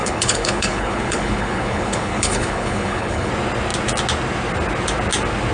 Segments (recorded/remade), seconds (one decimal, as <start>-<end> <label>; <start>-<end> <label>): 0.0-3.3 remade; 3.3-5.5 recorded